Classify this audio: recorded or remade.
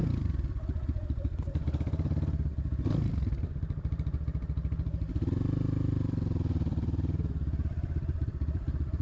remade